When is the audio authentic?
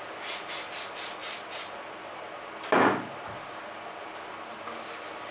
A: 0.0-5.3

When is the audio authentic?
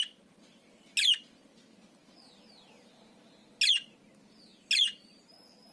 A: 0.0-5.7